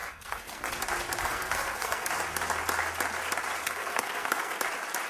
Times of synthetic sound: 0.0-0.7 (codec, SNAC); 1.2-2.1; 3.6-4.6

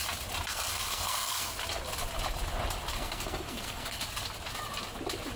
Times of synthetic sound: 0.5-1.5 (codec, SNAC); 2.9-4.0

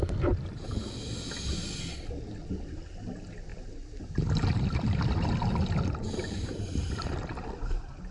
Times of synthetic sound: none

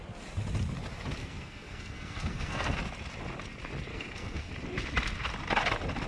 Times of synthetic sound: 1.2-2.8 (codec, SNAC); 3.9-4.5

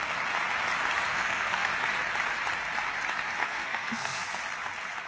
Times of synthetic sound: 1.1-1.7 (codec, SNAC); 3.4-4.3

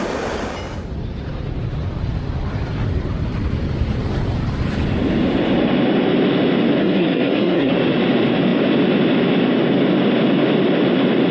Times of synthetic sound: 6.8-7.7 (codec, SNAC)

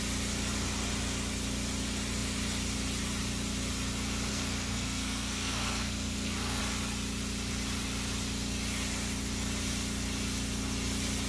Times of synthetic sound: 4.3-6.6 (codec, SNAC)

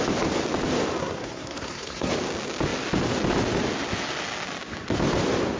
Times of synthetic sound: 1.0-2.1 (codec, SNAC)